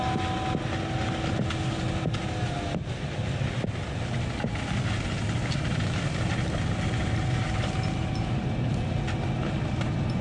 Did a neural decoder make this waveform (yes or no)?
no